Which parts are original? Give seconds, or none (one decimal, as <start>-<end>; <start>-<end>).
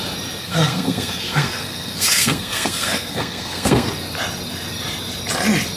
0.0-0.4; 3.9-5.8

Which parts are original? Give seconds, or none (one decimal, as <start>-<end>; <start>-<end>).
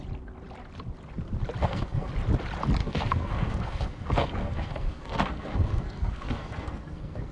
0.0-1.6; 2.1-2.8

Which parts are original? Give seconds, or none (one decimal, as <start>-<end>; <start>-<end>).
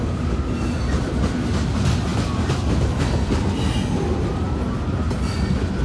0.0-5.8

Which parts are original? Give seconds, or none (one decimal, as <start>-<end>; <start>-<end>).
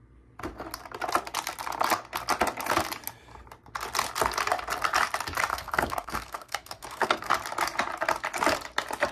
0.0-5.5; 7.3-9.1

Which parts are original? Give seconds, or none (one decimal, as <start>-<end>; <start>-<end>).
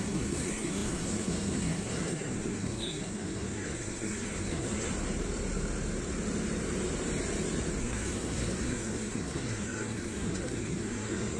4.9-7.8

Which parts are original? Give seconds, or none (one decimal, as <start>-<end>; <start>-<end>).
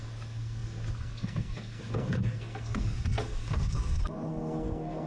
none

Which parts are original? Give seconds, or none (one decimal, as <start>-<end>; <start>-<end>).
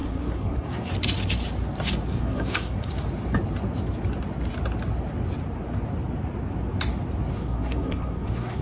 0.9-2.1; 2.9-7.3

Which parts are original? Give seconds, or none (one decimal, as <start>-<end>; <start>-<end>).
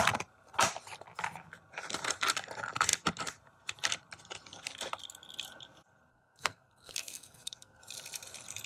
0.0-6.1; 7.8-8.7